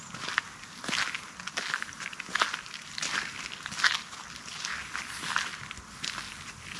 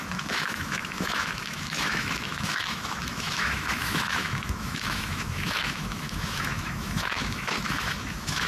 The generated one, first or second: second